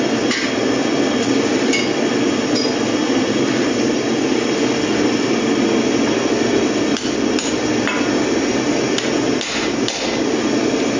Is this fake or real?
real